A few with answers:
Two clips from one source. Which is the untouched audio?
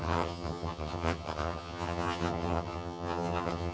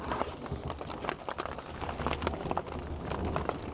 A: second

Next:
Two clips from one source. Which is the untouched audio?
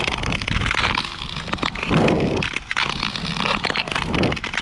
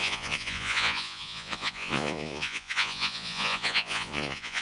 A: first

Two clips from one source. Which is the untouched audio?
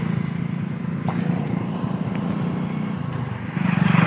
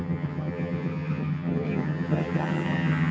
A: first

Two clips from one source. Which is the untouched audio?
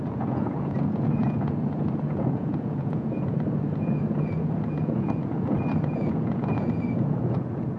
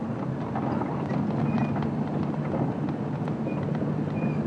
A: second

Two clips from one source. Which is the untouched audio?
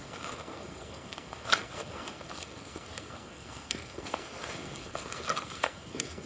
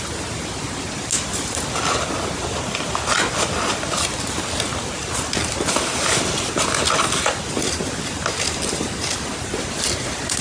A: second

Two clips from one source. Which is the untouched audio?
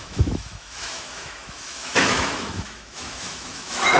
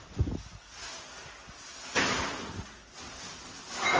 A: second